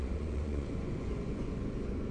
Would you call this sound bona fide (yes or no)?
no